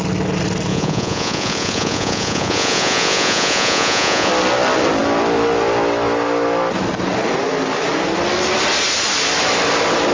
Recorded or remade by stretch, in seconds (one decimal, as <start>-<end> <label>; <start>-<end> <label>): 0.0-0.7 recorded; 0.7-4.3 remade; 4.3-10.1 recorded